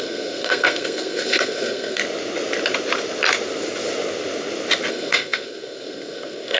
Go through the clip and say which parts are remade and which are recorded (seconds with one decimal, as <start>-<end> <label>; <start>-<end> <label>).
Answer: 0.0-2.0 remade; 2.0-4.9 recorded; 4.9-6.6 remade